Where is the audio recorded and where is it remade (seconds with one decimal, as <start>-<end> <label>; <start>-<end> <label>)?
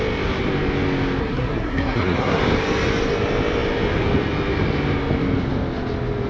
0.0-1.2 recorded; 1.2-2.4 remade; 2.4-6.3 recorded